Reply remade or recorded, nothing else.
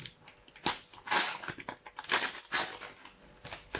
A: recorded